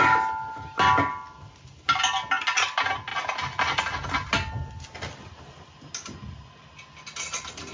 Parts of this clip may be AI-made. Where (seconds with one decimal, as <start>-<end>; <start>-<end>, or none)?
none